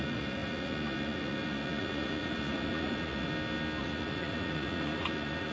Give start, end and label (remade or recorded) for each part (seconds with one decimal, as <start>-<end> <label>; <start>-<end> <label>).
0.0-3.3 remade; 3.3-3.8 recorded; 3.8-5.5 remade